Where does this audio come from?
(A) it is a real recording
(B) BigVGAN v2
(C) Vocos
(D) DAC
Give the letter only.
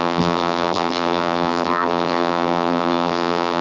B